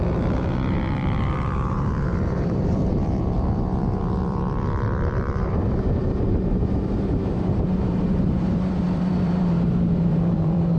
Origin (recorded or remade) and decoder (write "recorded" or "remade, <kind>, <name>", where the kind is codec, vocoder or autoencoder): remade, vocoder, BigVGAN v2